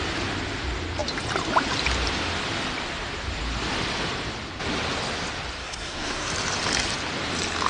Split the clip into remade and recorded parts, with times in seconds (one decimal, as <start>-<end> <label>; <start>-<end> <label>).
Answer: 0.0-5.6 recorded; 5.6-6.3 remade; 6.3-7.7 recorded